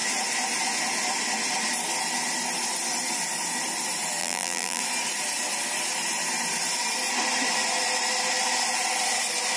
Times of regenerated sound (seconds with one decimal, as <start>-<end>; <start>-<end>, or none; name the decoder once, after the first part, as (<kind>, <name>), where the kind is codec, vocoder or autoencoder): 4.2-4.8 (vocoder, BigVGAN v2)